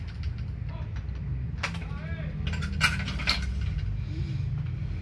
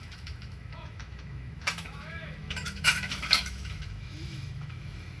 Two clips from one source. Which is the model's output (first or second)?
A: second